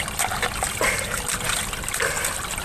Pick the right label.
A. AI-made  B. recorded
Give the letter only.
B